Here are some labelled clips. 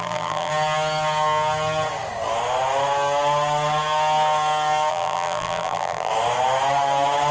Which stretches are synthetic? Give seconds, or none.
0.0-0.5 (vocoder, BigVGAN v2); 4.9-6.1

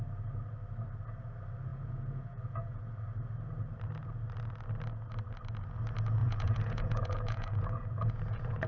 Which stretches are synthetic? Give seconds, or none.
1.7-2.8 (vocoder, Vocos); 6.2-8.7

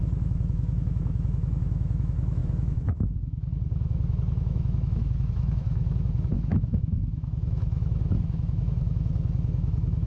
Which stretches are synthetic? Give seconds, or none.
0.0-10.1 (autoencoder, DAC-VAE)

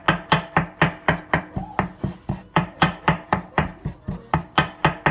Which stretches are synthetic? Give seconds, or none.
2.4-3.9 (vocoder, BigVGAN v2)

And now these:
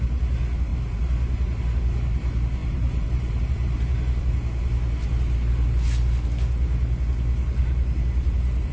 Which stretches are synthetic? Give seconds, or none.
0.7-1.6 (vocoder, BigVGAN v2); 2.6-4.2; 7.6-8.7

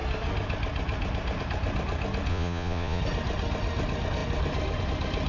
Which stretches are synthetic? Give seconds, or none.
2.3-3.0 (vocoder, Vocos)

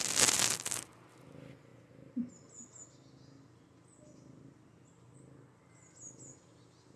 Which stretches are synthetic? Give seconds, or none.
none